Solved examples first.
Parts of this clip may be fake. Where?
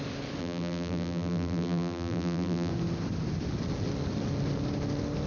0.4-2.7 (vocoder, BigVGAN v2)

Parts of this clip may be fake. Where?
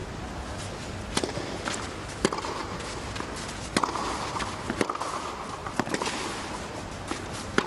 5.6-6.7 (vocoder, BigVGAN v2)